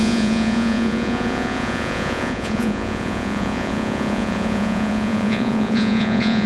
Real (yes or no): no